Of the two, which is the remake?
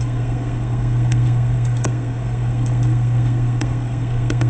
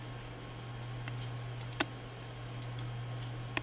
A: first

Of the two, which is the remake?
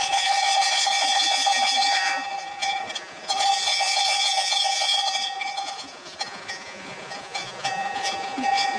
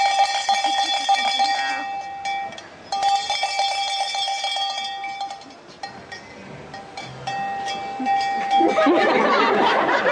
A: first